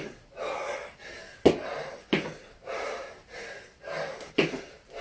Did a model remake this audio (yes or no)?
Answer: no